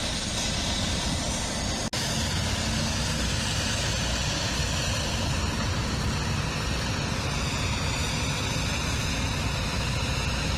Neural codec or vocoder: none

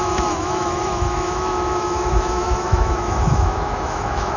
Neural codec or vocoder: autoencoder, DAC-VAE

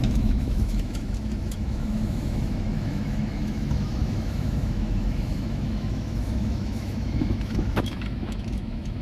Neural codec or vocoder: autoencoder, DAC-VAE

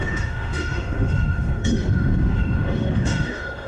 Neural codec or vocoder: autoencoder, DAC-VAE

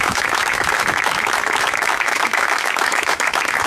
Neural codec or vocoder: autoencoder, DAC-VAE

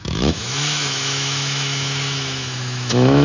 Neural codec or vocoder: autoencoder, DAC-VAE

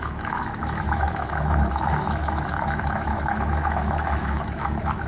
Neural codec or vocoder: autoencoder, DAC-VAE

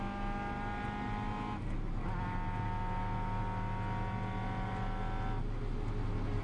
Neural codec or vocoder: none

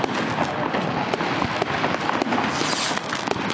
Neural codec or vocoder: none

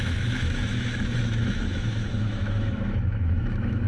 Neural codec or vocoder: autoencoder, DAC-VAE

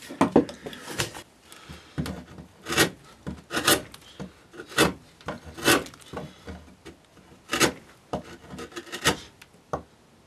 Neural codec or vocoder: none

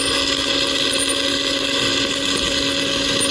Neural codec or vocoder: none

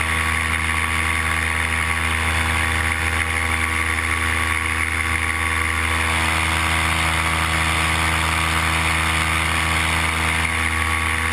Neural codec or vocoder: none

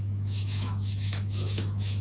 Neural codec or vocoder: autoencoder, DAC-VAE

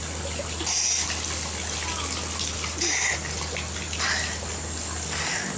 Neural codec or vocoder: none